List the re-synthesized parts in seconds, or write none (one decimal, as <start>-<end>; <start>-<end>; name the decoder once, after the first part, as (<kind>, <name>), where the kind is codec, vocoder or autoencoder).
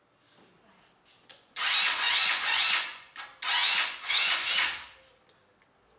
1.2-3.1 (vocoder, Vocos); 3.6-4.5